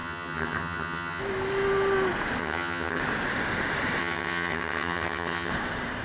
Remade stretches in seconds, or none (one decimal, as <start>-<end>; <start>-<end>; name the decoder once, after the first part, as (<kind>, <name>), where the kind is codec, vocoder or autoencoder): 0.0-1.2 (vocoder, HiFi-GAN); 2.4-3.0; 4.0-5.5